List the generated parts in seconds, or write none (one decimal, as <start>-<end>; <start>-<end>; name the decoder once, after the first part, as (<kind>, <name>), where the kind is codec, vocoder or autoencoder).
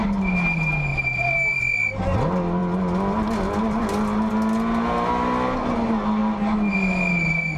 none